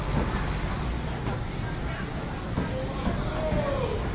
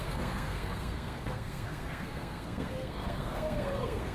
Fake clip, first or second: second